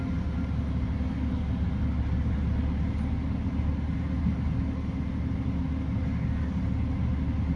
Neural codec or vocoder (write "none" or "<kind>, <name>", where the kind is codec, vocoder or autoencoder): none